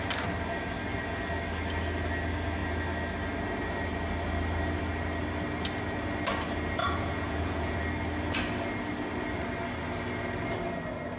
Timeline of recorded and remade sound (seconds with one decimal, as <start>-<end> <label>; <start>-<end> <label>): 0.0-6.8 recorded; 6.8-7.8 remade; 7.8-11.2 recorded